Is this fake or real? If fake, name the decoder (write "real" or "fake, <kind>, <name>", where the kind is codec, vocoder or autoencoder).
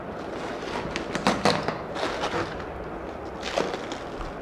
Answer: real